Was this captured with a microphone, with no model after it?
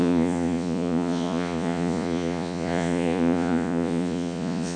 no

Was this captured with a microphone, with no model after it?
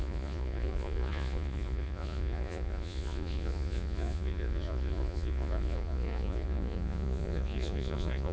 no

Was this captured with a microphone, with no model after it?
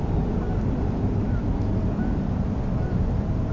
yes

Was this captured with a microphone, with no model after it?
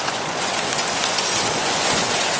no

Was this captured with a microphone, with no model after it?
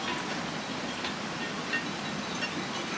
yes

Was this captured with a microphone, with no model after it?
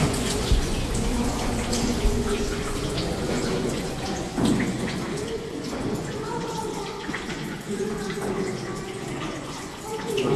no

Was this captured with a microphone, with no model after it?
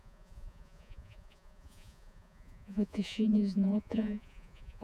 no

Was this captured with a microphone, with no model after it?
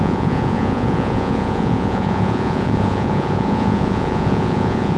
no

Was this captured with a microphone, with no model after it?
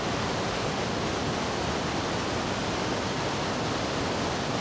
yes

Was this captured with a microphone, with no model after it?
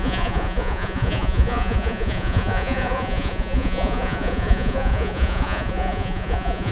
no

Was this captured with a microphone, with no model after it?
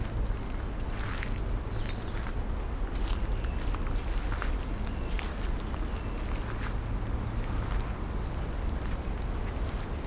yes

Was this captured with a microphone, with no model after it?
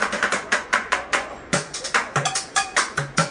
no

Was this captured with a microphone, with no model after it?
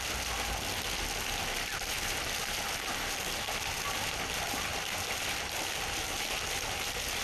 yes